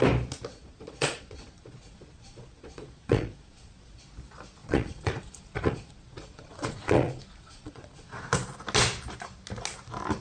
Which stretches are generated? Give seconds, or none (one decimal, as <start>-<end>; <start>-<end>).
0.5-4.0; 4.6-8.3